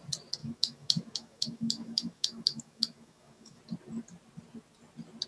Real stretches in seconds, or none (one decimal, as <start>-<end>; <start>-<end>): 0.0-0.4; 3.6-5.3